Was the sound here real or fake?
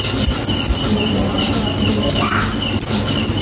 real